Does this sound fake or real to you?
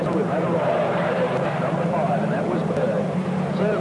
fake